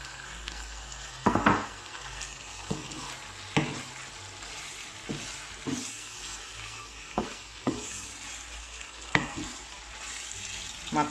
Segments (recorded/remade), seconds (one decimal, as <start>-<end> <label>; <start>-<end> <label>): 0.0-3.1 remade; 3.1-5.9 recorded; 5.9-8.1 remade; 8.1-8.6 recorded; 8.6-9.4 remade; 9.4-11.1 recorded